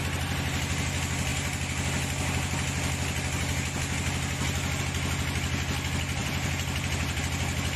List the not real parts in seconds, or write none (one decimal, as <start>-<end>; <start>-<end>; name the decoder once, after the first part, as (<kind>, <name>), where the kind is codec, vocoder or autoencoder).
6.2-7.2 (vocoder, BigVGAN v2)